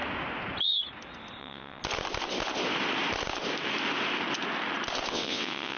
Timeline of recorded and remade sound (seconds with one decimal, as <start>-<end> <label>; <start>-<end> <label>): 0.0-1.4 recorded; 1.4-1.8 remade; 1.8-5.1 recorded; 5.1-5.8 remade